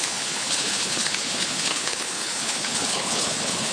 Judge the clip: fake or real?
fake